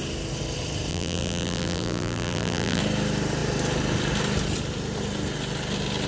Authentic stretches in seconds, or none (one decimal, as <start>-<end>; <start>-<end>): 0.0-0.9; 2.8-6.1